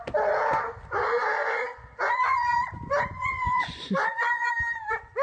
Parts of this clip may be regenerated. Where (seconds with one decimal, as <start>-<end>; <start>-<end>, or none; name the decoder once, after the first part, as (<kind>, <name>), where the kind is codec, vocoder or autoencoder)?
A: 1.4-4.5 (vocoder, Vocos)